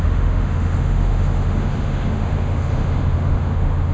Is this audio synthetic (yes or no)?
yes